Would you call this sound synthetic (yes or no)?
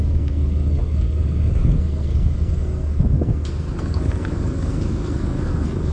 yes